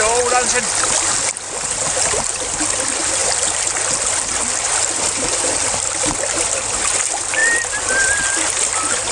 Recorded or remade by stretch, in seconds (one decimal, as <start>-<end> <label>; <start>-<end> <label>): 0.0-9.1 recorded